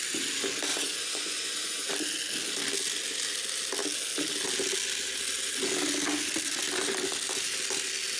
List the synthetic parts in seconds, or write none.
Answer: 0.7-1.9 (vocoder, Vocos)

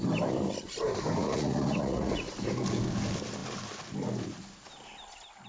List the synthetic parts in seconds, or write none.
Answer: 1.2-2.3 (vocoder, Vocos)

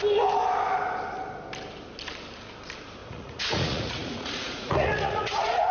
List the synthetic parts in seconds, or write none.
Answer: 3.0-5.7 (vocoder, Vocos)

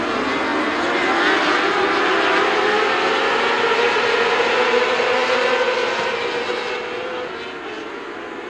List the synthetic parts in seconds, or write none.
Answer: none